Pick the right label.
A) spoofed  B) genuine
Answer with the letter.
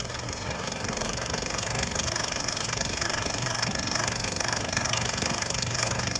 A